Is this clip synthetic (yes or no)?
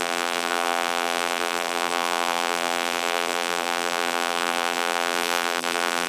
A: yes